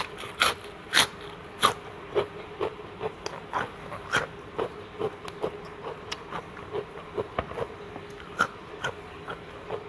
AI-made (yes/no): no